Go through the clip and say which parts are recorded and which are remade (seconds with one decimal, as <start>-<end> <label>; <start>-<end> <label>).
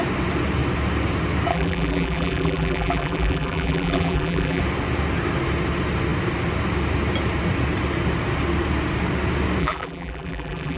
0.0-1.5 recorded; 1.5-4.6 remade; 4.6-9.6 recorded; 9.6-10.8 remade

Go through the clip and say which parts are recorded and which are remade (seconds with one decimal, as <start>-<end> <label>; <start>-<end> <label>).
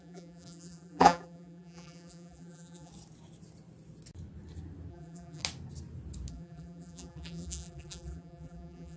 0.0-2.9 remade; 2.9-4.9 recorded; 4.9-5.4 remade; 5.4-6.3 recorded; 6.3-9.0 remade